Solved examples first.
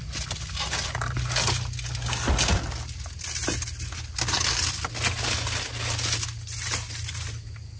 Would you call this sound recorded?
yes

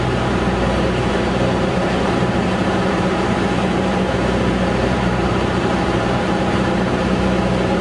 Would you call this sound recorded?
no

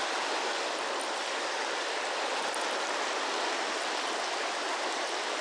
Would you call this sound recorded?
yes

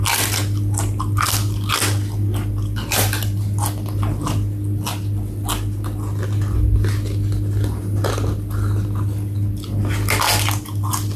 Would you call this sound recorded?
yes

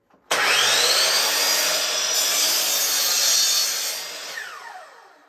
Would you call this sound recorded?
yes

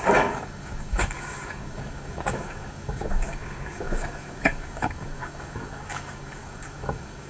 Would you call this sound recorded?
no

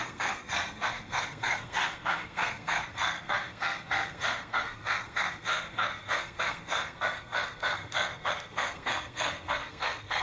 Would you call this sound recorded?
no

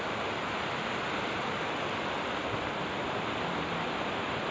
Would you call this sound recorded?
yes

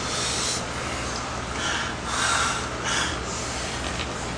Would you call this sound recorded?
yes